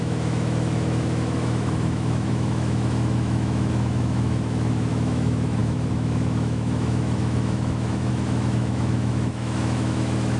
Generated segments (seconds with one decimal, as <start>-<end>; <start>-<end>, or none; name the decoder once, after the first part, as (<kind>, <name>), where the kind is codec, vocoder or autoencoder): 0.0-10.4 (autoencoder, DAC-VAE)